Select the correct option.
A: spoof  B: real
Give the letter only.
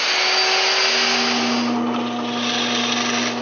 B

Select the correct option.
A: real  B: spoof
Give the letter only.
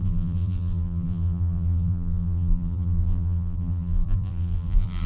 B